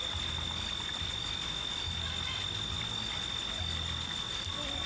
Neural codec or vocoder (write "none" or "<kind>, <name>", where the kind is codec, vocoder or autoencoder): none